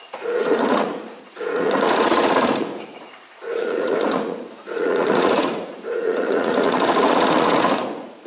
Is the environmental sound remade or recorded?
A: remade